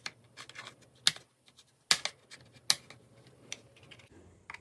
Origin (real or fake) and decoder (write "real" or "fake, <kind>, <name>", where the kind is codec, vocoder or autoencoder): real